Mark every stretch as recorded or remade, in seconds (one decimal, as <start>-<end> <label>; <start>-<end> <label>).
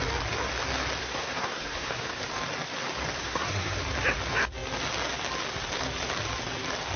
0.0-1.0 recorded; 1.0-2.2 remade; 2.2-3.2 recorded; 3.2-3.8 remade; 3.8-7.0 recorded